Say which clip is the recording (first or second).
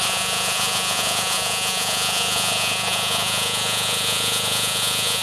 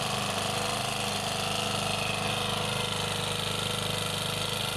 second